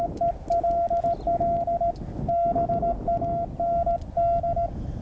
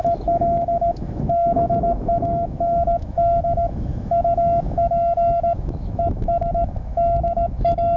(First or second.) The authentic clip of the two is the first